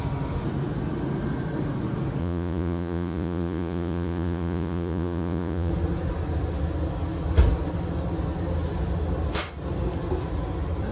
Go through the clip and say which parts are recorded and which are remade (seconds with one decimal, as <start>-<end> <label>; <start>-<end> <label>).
0.0-2.2 recorded; 2.2-5.7 remade; 5.7-10.9 recorded